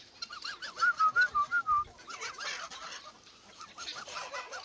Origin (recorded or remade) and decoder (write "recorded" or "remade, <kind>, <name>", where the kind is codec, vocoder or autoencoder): recorded